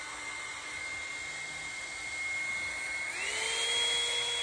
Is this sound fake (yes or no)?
no